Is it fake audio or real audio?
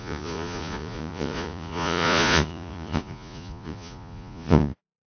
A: fake